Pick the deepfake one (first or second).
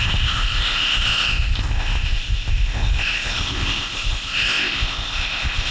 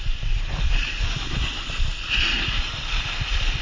first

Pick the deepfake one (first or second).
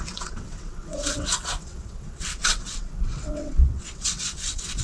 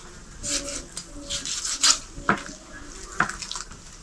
first